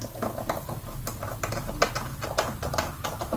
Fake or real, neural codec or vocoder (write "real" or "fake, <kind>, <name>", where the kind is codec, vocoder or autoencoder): real